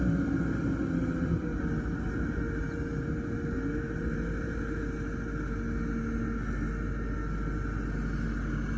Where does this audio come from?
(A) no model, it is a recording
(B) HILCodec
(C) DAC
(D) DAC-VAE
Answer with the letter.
A